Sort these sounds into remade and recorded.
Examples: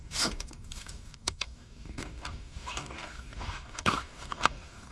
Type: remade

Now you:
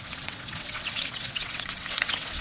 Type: remade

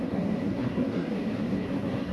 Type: remade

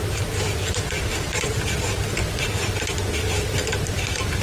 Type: recorded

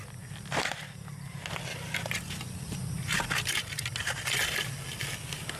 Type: recorded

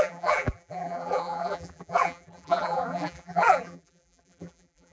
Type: remade